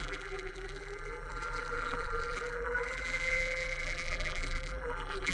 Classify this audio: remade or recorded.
remade